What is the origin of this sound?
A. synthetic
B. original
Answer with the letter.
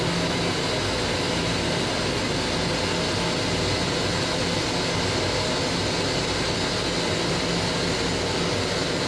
B